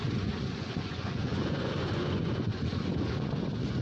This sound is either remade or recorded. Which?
remade